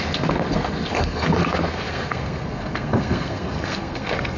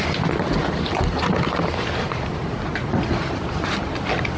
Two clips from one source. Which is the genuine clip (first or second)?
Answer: second